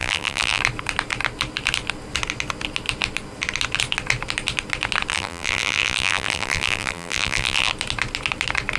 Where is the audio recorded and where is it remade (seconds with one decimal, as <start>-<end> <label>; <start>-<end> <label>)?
0.0-0.6 remade; 0.6-5.1 recorded; 5.1-7.7 remade; 7.7-8.8 recorded